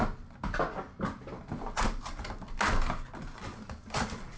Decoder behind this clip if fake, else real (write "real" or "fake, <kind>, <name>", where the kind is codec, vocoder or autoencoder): real